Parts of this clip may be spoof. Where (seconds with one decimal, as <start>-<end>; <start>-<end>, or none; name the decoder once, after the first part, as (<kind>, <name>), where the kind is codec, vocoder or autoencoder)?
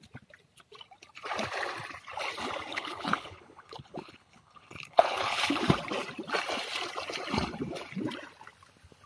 2.7-5.6 (codec, HILCodec)